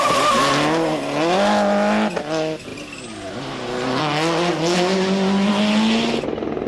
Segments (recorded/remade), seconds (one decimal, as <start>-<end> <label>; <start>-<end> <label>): 0.0-6.7 recorded